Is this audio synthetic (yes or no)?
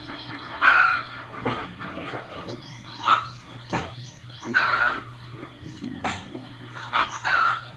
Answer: yes